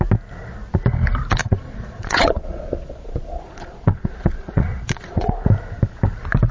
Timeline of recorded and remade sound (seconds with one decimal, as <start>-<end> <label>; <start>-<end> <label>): 0.0-1.4 recorded; 1.4-5.3 remade; 5.3-6.5 recorded